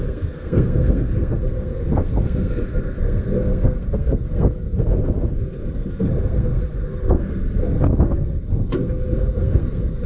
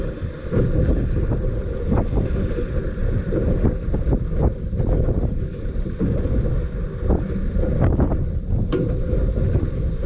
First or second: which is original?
second